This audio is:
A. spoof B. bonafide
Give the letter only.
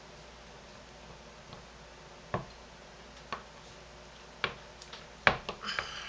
B